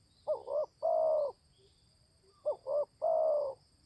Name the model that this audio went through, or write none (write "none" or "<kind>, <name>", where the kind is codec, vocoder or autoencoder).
vocoder, BigVGAN v2